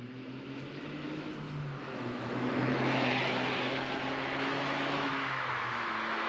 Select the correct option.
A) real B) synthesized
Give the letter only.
B